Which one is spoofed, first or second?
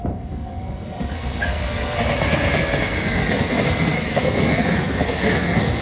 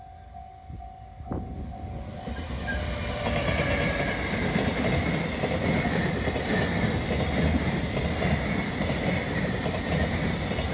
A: first